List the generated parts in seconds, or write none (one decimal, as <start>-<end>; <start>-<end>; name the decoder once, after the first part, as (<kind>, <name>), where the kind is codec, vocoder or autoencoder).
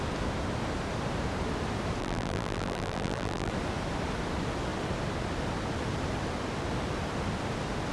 2.0-3.5 (vocoder, BigVGAN v2)